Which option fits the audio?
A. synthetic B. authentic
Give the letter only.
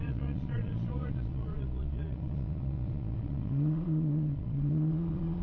A